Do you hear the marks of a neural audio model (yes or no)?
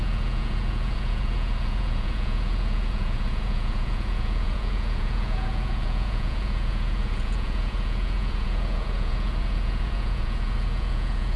yes